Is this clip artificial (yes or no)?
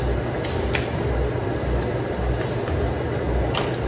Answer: no